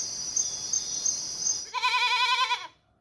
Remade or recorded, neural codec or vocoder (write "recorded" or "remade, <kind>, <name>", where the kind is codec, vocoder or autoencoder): recorded